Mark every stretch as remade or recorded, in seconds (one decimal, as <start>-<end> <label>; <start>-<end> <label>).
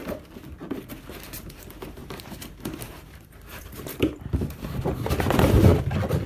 0.0-2.0 recorded; 2.0-5.8 remade; 5.8-6.3 recorded